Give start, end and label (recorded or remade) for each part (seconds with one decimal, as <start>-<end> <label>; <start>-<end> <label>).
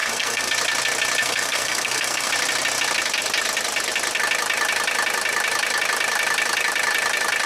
0.0-0.5 remade; 0.5-1.2 recorded; 1.2-2.3 remade; 2.3-7.5 recorded